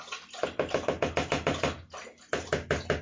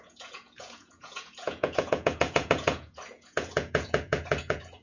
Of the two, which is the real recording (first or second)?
first